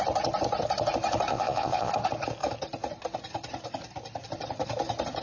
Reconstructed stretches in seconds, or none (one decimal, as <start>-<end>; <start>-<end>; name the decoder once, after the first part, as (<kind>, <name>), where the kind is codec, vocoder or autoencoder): 1.3-1.9 (vocoder, Vocos)